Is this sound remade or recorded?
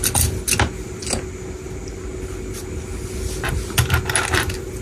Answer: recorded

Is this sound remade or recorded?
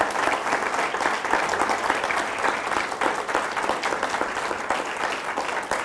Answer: recorded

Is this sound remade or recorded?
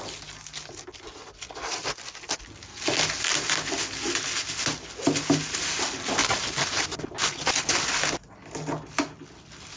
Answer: recorded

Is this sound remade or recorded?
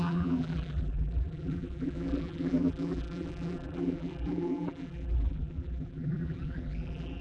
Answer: remade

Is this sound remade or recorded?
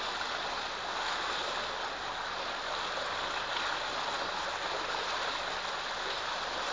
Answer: recorded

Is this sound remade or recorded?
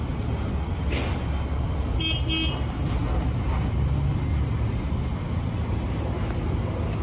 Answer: recorded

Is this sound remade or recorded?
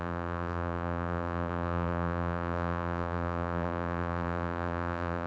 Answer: remade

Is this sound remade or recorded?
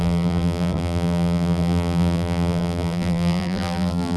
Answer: remade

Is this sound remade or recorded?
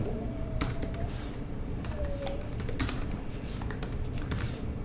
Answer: remade